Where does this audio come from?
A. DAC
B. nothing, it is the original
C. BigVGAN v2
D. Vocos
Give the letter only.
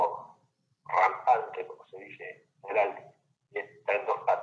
B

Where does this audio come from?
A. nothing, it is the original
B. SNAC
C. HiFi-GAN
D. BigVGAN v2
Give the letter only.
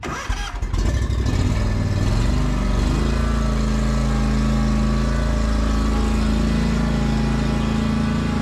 A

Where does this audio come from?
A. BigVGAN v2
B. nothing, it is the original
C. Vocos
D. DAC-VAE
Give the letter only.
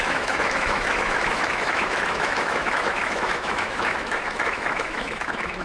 D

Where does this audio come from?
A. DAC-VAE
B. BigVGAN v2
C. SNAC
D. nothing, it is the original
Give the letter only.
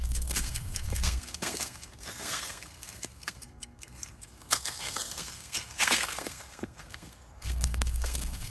C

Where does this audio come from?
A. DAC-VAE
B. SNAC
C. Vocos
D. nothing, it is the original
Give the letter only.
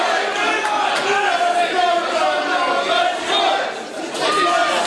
D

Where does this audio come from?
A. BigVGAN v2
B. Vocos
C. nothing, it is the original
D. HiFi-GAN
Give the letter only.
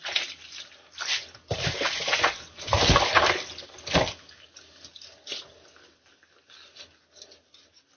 C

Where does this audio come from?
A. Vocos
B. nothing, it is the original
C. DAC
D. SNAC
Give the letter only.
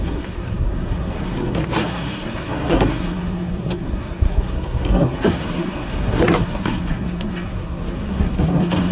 D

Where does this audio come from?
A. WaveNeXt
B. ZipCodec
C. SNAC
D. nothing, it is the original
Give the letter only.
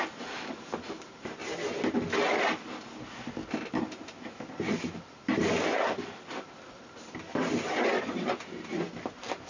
D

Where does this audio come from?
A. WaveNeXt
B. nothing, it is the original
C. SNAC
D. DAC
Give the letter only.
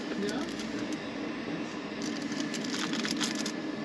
B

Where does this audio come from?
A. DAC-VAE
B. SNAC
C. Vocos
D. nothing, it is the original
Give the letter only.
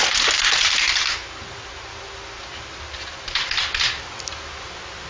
D